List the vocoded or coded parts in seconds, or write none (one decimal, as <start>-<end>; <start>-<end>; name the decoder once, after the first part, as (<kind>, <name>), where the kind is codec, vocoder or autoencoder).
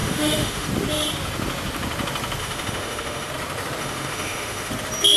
0.0-0.7 (autoencoder, DAC-VAE); 2.4-3.3; 3.8-4.7